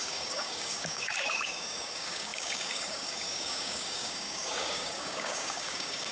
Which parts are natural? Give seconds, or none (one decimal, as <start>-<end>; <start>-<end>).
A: none